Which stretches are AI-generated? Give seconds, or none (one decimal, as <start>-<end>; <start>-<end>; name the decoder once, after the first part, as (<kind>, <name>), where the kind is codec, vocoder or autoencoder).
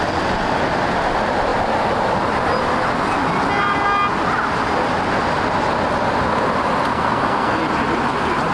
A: 6.9-7.6 (codec, SNAC)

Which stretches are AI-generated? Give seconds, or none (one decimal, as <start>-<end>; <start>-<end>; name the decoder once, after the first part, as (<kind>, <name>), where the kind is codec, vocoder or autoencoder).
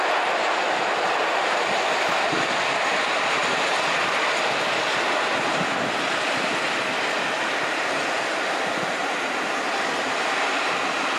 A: none